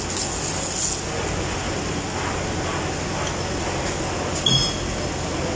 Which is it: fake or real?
real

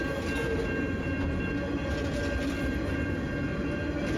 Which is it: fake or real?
real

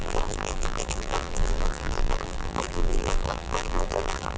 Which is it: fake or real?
fake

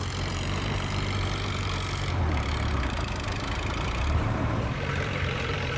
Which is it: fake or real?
fake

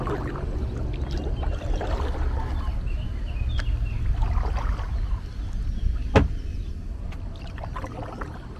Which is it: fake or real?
real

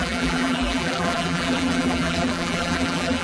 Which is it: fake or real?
fake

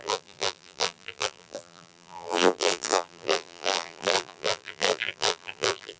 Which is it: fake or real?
fake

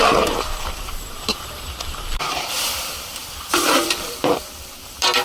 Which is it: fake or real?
fake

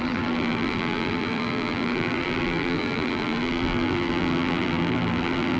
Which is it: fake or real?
fake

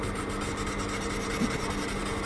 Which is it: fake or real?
fake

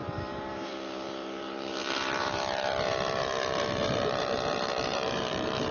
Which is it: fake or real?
fake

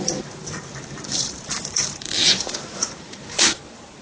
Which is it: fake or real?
fake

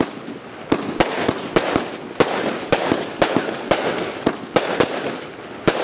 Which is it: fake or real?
real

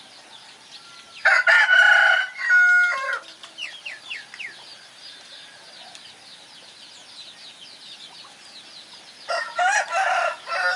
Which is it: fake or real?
real